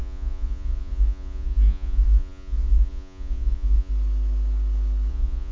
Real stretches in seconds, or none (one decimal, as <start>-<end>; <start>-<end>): 3.9-5.1